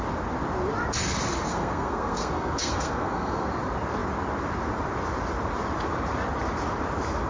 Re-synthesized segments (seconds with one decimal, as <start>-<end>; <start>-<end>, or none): 1.5-3.5